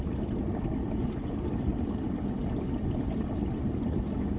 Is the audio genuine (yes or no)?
yes